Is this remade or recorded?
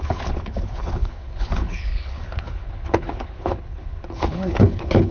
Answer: remade